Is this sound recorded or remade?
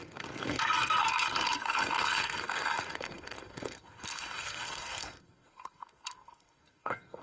remade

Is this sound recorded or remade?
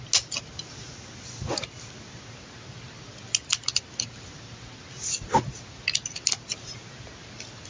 recorded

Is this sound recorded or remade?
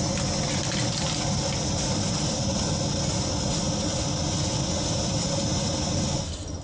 recorded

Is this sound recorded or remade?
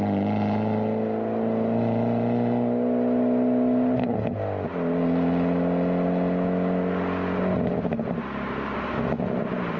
recorded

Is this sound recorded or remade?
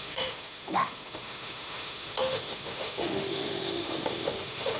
remade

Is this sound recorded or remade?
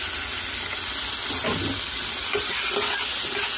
recorded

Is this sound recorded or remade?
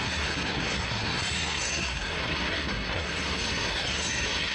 remade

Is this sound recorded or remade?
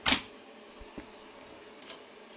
recorded